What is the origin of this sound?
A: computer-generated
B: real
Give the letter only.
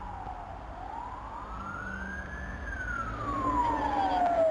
B